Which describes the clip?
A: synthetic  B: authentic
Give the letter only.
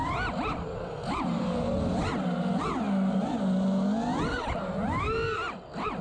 B